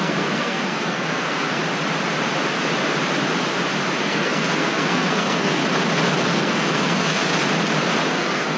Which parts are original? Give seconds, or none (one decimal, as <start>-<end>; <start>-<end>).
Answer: 1.6-4.0; 5.6-6.2; 7.2-8.1